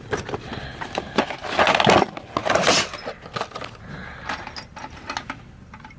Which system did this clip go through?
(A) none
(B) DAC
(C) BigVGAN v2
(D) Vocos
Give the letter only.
A